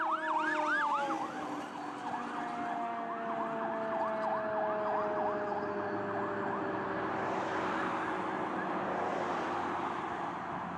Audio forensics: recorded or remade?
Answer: recorded